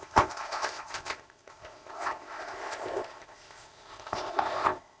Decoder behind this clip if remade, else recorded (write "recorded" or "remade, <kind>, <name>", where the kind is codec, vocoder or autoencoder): remade, codec, ZipCodec